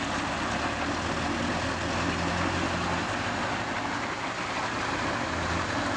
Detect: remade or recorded recorded